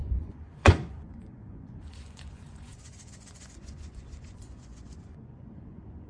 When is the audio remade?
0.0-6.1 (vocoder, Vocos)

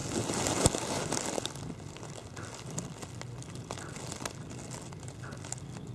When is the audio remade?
none

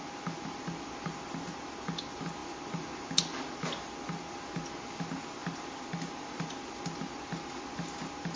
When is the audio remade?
none